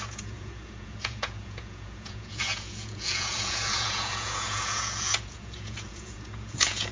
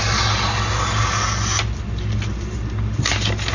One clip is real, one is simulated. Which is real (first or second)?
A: second